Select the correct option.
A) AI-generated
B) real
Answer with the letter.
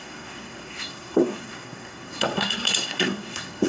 A